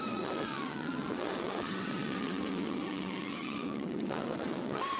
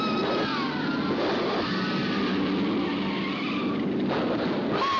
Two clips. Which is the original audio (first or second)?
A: second